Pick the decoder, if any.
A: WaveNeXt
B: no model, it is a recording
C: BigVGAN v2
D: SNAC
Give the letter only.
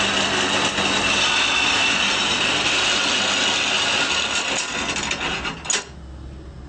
B